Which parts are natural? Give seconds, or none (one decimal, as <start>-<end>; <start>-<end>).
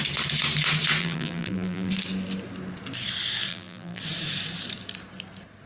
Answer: 0.0-1.0; 1.9-3.5; 4.0-5.7